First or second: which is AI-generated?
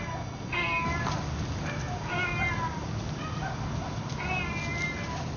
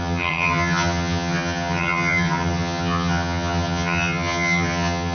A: second